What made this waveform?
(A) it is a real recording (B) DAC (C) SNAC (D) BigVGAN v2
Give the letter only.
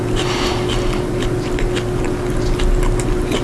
A